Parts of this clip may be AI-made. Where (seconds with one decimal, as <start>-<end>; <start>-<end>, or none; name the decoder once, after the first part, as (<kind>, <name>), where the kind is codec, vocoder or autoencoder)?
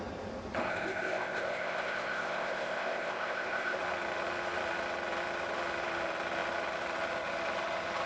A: 0.6-3.8 (codec, ZipCodec)